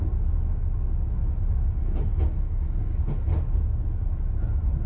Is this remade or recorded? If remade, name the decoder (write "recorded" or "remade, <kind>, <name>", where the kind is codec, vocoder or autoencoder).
recorded